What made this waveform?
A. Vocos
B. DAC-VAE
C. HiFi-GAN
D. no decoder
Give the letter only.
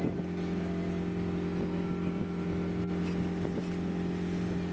D